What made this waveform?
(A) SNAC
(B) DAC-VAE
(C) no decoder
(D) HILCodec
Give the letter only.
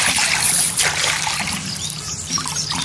C